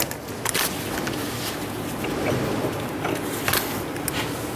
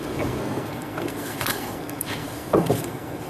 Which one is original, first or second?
first